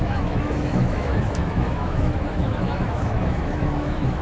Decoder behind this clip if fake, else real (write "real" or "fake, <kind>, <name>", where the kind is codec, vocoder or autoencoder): fake, autoencoder, DAC-VAE